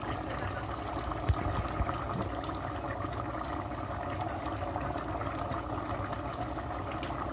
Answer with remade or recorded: recorded